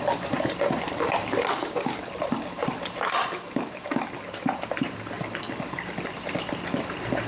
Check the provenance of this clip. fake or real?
real